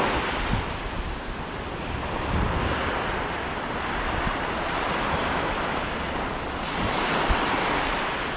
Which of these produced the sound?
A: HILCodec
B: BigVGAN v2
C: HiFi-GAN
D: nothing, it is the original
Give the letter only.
D